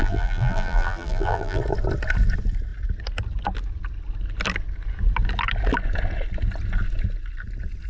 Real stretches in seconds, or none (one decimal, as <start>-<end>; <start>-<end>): 1.6-7.9